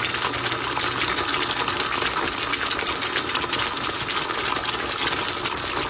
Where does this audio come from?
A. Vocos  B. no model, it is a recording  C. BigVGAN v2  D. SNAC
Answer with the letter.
B